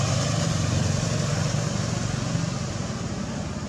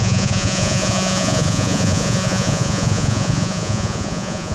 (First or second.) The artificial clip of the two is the second